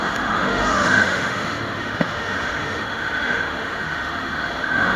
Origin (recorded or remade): remade